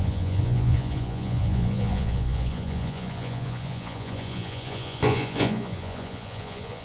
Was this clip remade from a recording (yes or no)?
yes